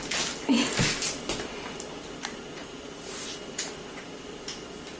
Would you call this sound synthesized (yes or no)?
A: no